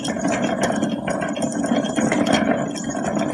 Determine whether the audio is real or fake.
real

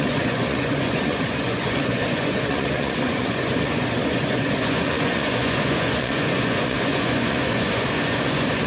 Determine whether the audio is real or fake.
fake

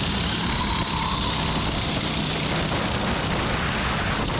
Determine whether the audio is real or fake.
real